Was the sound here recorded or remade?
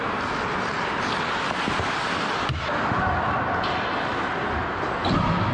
recorded